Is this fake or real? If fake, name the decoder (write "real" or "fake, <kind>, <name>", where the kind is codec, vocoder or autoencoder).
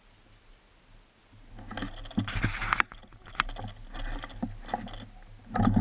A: real